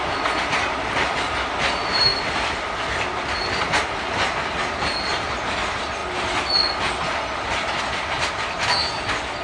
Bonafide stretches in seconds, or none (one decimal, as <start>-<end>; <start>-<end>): 0.0-9.4